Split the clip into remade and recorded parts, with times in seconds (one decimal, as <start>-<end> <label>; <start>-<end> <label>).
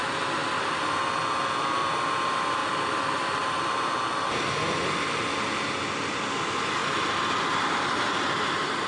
0.0-8.9 recorded